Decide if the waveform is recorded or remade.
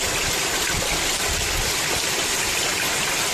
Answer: recorded